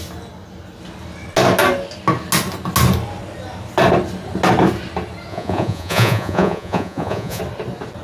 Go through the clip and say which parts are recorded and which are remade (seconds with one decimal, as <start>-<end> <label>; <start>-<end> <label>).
0.0-5.3 recorded; 5.3-7.4 remade; 7.4-8.0 recorded